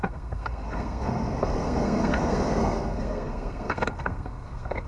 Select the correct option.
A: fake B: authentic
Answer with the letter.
A